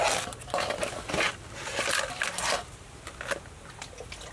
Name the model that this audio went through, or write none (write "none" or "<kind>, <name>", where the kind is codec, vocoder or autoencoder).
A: none